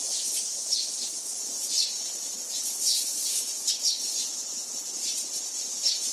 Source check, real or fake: fake